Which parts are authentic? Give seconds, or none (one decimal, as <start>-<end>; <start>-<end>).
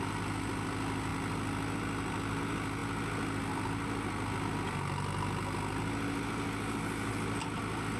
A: 0.0-8.0